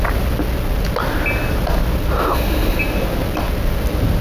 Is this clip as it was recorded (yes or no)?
yes